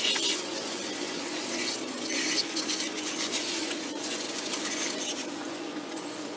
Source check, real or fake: fake